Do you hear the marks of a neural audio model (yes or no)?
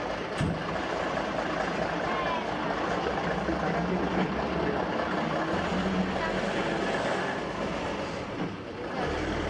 no